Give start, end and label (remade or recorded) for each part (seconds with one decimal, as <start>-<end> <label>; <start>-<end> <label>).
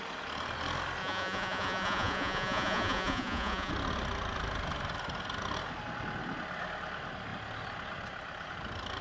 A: 0.0-1.0 recorded; 1.0-3.7 remade; 3.7-9.0 recorded